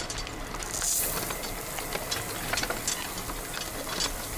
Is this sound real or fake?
real